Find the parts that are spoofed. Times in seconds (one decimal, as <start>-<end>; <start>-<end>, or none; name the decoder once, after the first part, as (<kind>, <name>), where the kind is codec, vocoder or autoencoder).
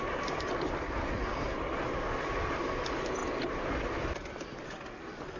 1.3-2.6 (vocoder, BigVGAN v2)